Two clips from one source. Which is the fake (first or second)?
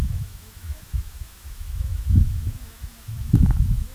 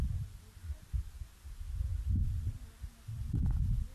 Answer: first